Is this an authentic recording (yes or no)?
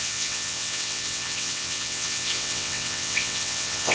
no